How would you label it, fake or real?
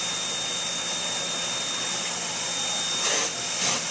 real